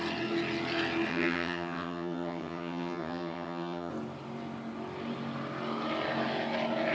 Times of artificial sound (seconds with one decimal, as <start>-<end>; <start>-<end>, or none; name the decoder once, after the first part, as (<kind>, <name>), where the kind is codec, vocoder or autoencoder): 1.1-3.9 (vocoder, HiFi-GAN)